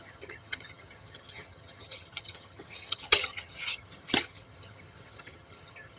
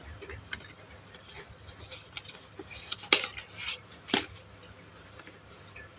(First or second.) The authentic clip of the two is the second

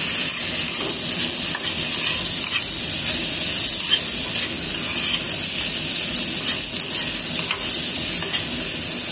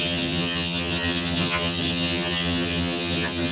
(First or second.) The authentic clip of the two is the first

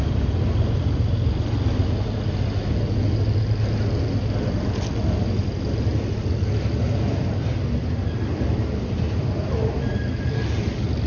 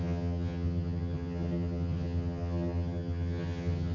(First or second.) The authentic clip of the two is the first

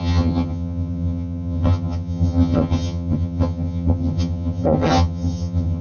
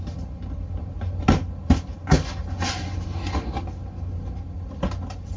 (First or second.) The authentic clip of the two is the second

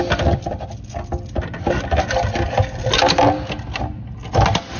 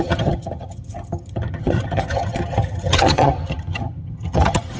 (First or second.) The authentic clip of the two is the first